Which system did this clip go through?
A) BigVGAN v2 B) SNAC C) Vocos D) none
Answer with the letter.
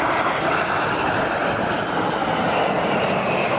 A